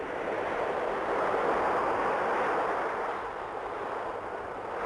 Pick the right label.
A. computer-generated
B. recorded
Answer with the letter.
B